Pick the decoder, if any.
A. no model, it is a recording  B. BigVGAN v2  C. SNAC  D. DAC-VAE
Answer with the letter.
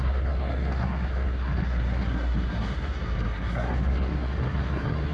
C